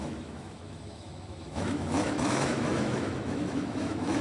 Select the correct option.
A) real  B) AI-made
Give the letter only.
B